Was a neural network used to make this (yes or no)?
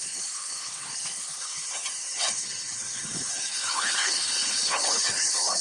yes